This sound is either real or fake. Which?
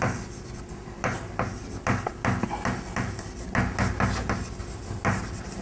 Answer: real